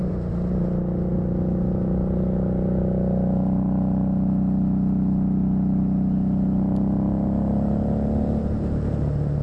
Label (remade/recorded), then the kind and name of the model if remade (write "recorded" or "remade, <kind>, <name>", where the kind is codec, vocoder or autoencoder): recorded